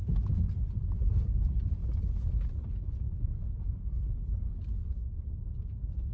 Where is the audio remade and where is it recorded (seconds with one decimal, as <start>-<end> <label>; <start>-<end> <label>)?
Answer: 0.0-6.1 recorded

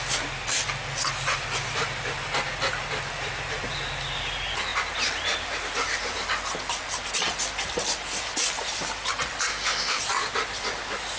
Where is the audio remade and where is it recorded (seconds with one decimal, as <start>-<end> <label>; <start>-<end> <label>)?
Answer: 0.0-9.5 recorded; 9.5-10.0 remade; 10.0-11.2 recorded

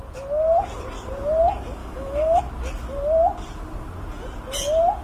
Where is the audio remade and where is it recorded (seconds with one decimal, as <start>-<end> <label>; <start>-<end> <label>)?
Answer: 0.0-1.8 recorded; 1.8-2.4 remade; 2.4-5.0 recorded